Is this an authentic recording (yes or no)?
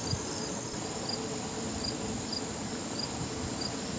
yes